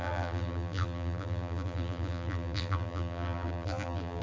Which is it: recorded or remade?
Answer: remade